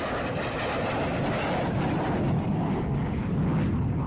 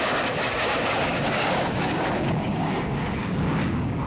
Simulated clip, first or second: second